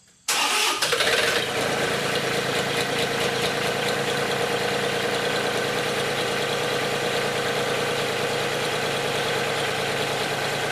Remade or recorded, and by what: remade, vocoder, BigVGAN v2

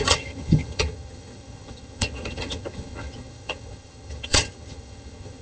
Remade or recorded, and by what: remade, vocoder, HiFi-GAN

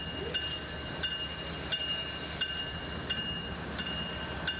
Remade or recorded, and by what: recorded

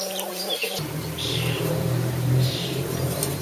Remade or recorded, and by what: remade, vocoder, BigVGAN v2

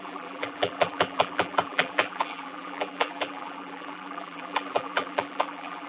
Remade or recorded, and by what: remade, vocoder, BigVGAN v2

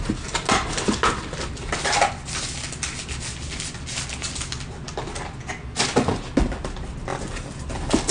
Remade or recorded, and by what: recorded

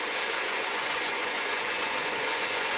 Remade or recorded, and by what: remade, vocoder, Vocos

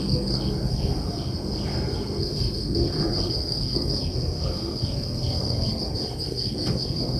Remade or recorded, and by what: remade, codec, SNAC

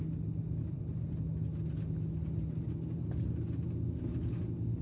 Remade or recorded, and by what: recorded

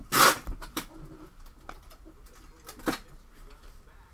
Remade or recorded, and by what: recorded